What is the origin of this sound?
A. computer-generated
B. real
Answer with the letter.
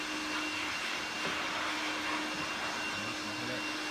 B